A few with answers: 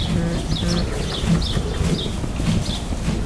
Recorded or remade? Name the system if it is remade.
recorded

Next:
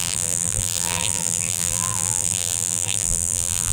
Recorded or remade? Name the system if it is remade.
remade, vocoder, BigVGAN v2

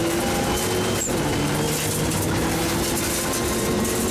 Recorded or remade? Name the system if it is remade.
recorded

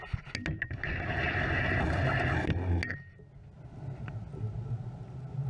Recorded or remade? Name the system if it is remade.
recorded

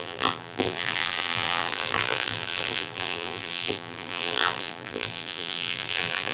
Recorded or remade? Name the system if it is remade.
remade, vocoder, BigVGAN v2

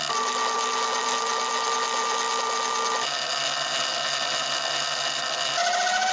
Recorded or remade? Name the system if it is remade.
recorded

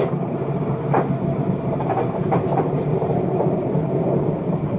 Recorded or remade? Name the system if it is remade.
remade, vocoder, BigVGAN v2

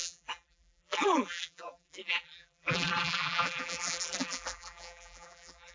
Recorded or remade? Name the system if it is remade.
remade, vocoder, BigVGAN v2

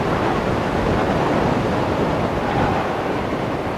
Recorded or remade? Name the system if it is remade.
recorded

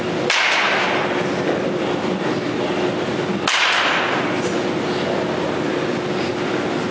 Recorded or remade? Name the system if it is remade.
recorded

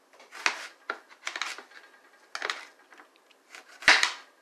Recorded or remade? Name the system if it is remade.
recorded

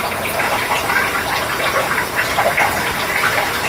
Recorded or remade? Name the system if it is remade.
remade, vocoder, BigVGAN v2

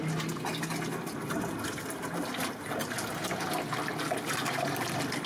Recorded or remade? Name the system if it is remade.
recorded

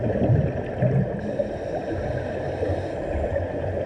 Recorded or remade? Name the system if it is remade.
recorded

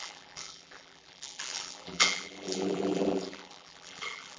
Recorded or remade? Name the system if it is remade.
remade, vocoder, BigVGAN v2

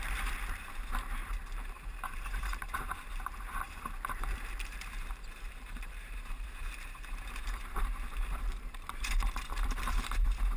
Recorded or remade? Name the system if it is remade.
remade, vocoder, BigVGAN v2